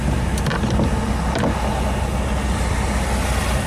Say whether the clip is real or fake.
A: real